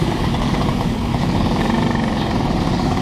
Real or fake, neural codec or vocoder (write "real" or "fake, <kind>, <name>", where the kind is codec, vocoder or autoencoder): fake, codec, DAC